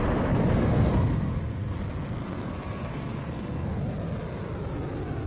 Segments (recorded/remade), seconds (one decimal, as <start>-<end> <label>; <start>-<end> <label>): 0.0-0.6 recorded; 0.6-1.7 remade; 1.7-2.2 recorded; 2.2-3.8 remade; 3.8-5.3 recorded